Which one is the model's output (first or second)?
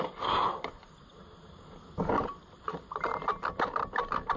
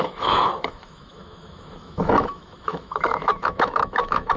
second